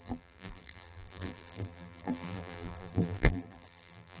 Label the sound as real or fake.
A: fake